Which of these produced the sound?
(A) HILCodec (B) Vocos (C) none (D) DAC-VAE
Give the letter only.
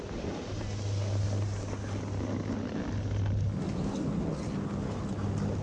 C